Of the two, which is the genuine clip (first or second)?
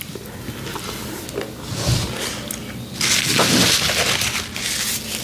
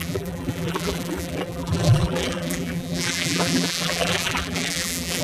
first